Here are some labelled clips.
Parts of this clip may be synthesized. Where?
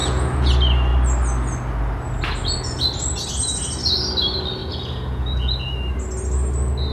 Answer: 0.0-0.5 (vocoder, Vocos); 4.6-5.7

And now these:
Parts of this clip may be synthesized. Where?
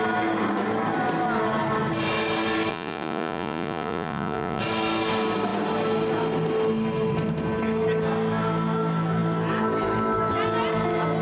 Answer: 2.7-4.6 (vocoder, Vocos)